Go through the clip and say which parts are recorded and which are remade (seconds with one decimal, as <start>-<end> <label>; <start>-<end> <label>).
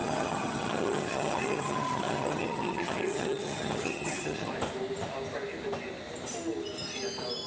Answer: 0.0-4.5 remade; 4.5-7.5 recorded